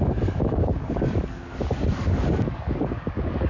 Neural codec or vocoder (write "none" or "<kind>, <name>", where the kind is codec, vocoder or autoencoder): codec, DAC